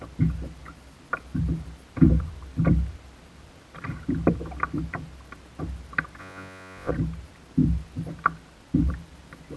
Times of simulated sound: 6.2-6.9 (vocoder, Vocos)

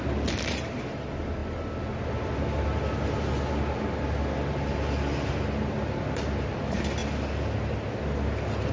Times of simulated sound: none

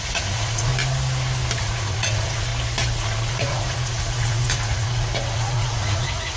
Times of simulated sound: 0.0-0.7 (vocoder, Vocos); 1.6-2.5; 3.3-6.4

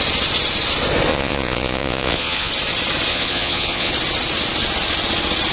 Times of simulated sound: 1.1-2.5 (vocoder, Vocos); 3.1-3.9

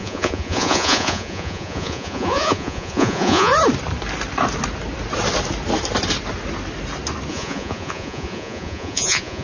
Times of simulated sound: 0.0-3.5 (vocoder, Vocos); 7.3-9.4

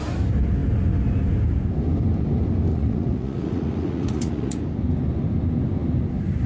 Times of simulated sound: 2.7-4.6 (vocoder, Vocos)